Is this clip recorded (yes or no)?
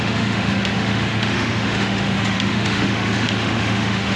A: no